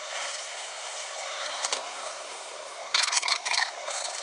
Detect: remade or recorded remade